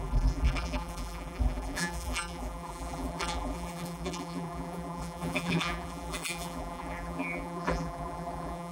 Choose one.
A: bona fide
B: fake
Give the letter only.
B